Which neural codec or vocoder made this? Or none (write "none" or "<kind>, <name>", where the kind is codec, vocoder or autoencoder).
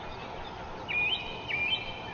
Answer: none